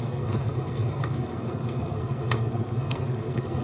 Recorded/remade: remade